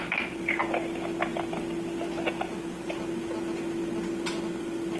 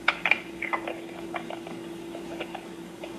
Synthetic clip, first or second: second